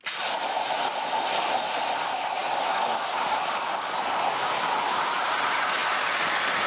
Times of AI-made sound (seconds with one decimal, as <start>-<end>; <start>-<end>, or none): none